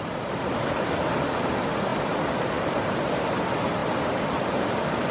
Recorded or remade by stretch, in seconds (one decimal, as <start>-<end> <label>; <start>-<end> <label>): 0.0-5.1 recorded